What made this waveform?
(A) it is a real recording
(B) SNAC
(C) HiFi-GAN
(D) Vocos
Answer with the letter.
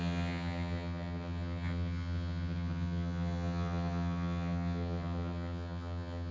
C